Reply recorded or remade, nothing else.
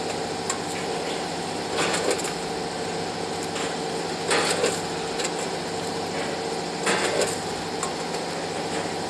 recorded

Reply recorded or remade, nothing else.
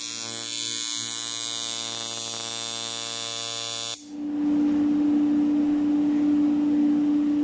recorded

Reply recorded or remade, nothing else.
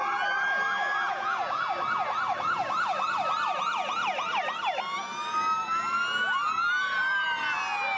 recorded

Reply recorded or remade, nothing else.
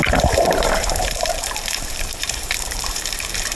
remade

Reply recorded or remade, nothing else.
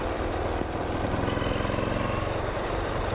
recorded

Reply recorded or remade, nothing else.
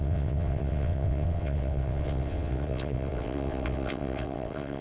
remade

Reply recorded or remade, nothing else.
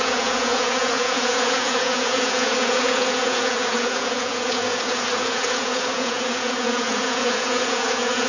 remade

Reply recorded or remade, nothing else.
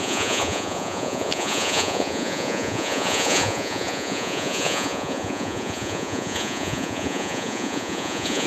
remade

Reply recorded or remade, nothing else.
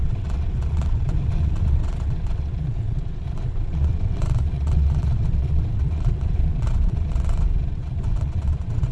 remade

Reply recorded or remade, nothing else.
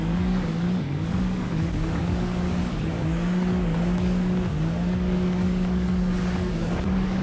remade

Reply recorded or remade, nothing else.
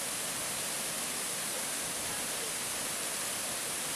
recorded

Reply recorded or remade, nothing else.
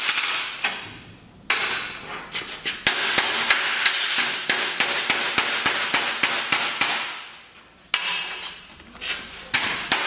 recorded